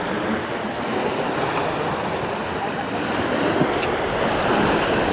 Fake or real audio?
real